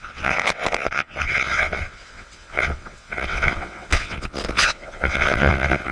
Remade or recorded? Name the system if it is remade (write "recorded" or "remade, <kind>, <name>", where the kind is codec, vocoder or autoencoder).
remade, vocoder, WaveNeXt